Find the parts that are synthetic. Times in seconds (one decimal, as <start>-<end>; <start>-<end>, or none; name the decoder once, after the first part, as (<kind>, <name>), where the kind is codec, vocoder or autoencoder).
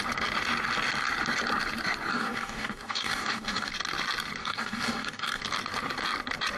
2.1-3.7 (codec, DAC); 4.4-5.4